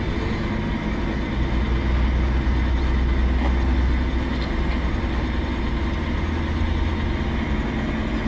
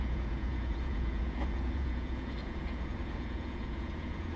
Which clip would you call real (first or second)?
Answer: first